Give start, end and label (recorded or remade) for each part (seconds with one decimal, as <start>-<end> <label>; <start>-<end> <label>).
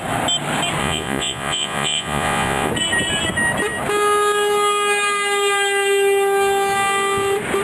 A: 0.0-0.8 recorded; 0.8-2.7 remade; 2.7-7.6 recorded